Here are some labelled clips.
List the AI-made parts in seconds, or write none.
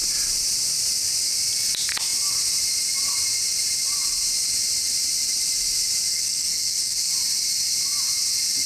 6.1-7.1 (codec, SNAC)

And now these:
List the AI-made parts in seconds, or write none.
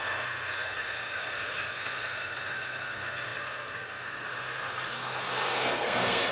0.0-6.3 (codec, SNAC)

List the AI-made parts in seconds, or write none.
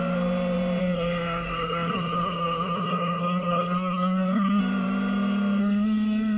0.8-4.6 (codec, SNAC); 5.6-6.4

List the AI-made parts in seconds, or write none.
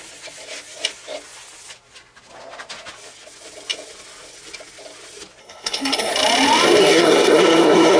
5.4-6.1 (codec, SNAC); 6.8-8.0